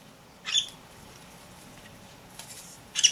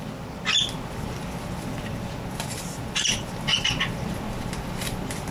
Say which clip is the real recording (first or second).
second